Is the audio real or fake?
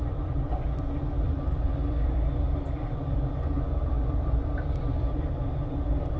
fake